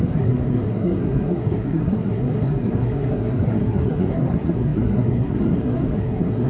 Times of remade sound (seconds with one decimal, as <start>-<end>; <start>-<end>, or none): 0.0-6.5